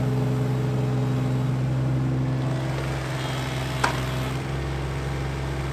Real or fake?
real